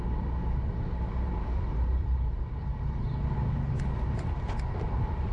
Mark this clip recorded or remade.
recorded